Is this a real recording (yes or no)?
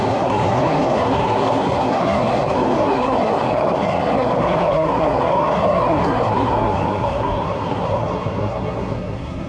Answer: no